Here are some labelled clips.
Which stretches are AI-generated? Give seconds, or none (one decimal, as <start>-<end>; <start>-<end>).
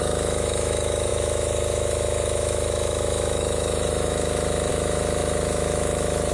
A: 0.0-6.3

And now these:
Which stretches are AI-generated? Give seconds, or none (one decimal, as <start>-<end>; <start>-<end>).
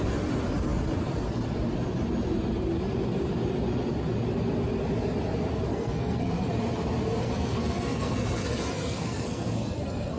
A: 5.7-6.5; 7.2-10.2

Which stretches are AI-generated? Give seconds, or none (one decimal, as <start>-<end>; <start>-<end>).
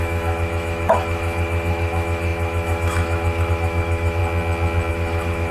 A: 0.0-4.2; 4.9-5.5